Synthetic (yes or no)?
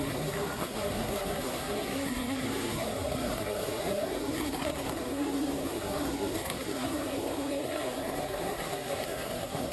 yes